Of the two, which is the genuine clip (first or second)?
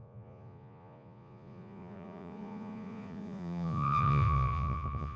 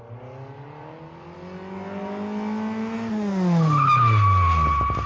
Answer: second